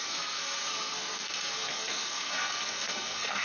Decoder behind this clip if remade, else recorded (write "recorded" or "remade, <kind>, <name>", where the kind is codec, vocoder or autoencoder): remade, codec, SNAC